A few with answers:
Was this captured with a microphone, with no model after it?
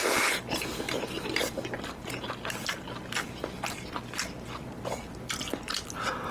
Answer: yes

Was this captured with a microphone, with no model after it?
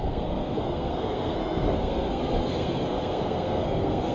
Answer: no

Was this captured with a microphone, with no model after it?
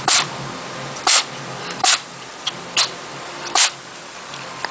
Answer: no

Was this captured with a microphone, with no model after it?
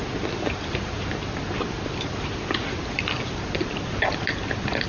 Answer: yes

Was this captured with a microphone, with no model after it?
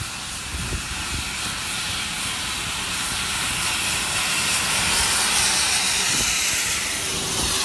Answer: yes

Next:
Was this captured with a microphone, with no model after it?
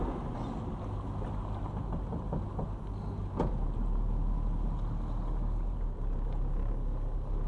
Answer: yes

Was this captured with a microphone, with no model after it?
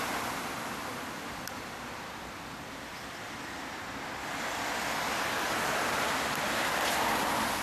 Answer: yes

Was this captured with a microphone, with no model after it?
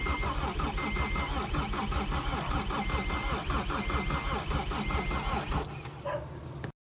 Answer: yes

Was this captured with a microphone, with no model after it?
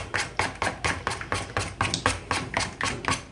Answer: yes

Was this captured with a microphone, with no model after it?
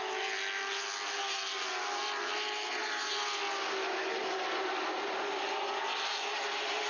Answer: yes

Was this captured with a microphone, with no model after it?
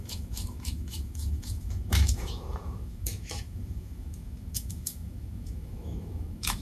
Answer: no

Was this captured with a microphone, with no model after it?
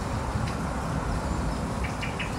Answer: yes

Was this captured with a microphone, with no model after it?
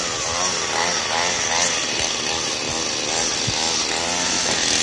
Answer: yes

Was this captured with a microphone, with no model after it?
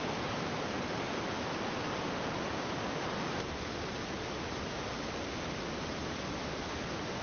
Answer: yes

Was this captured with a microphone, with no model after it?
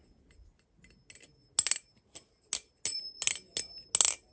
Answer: yes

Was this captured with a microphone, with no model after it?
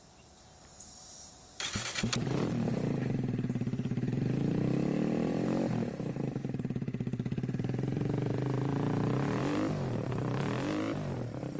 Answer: no